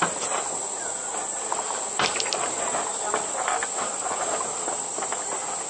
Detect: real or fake real